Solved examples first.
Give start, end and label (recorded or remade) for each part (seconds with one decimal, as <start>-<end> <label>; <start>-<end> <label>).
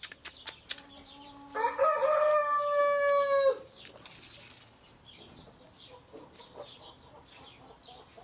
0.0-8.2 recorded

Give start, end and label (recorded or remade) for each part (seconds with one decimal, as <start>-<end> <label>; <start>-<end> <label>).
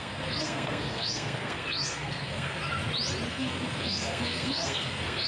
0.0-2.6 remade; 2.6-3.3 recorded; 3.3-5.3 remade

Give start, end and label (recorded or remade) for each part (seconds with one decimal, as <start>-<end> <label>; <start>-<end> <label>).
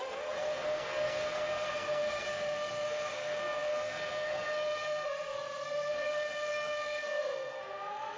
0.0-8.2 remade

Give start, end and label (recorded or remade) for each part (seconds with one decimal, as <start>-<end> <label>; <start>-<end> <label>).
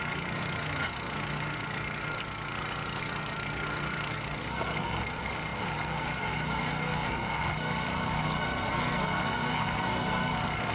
0.0-2.5 remade; 2.5-3.0 recorded; 3.0-10.7 remade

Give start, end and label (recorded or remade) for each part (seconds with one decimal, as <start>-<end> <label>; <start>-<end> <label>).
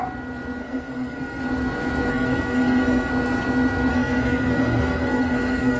0.0-0.6 recorded; 0.6-1.4 remade; 1.4-2.1 recorded; 2.1-3.1 remade; 3.1-3.9 recorded; 3.9-5.8 remade